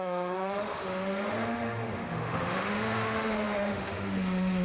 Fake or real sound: fake